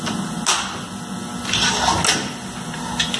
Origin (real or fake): real